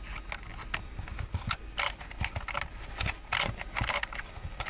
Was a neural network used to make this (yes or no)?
no